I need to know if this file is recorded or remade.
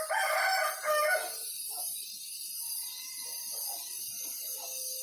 recorded